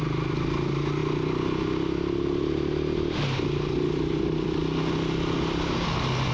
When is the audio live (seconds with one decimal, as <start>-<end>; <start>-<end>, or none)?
0.0-6.3